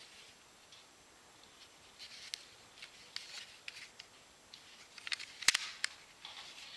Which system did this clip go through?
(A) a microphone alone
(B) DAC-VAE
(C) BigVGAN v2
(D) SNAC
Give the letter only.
A